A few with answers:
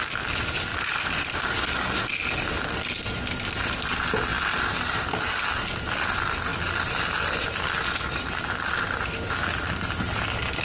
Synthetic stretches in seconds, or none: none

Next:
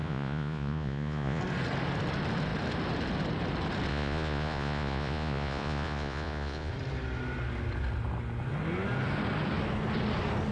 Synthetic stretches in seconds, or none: 0.0-1.4 (vocoder, Vocos); 3.9-6.7